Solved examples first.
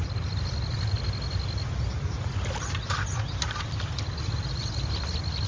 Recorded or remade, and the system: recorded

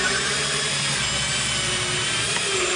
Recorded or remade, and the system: recorded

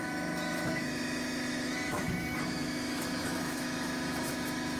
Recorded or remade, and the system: remade, autoencoder, DAC-VAE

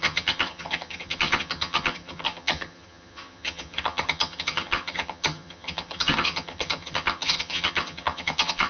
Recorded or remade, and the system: remade, vocoder, HiFi-GAN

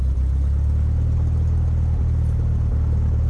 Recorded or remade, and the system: recorded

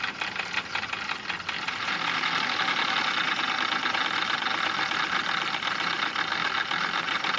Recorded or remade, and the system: recorded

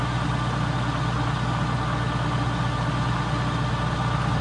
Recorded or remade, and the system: recorded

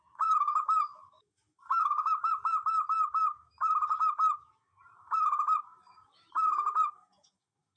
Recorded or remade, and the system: remade, autoencoder, DAC-VAE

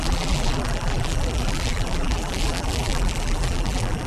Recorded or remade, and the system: remade, vocoder, BigVGAN v2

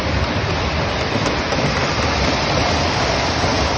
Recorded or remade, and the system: recorded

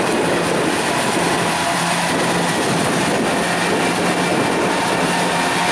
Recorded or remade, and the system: recorded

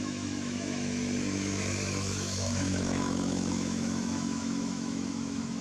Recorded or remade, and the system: remade, autoencoder, DAC-VAE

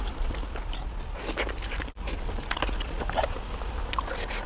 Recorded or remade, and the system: recorded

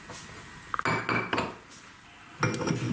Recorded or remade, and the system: recorded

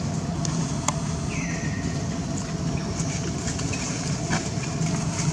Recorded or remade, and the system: recorded